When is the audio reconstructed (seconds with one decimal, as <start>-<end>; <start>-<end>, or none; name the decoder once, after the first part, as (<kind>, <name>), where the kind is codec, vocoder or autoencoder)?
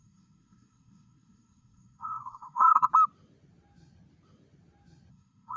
0.0-2.9 (codec, SNAC); 5.1-5.6